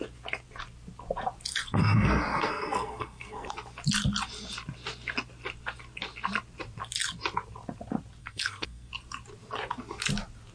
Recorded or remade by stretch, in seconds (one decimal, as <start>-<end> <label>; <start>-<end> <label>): 0.0-1.5 recorded; 1.5-3.5 remade; 3.5-8.2 recorded; 8.2-8.9 remade; 8.9-10.5 recorded